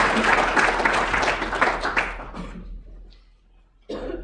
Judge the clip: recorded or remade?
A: recorded